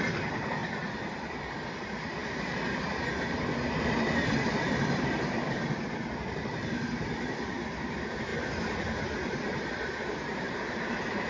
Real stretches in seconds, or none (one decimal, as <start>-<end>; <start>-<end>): 8.3-9.0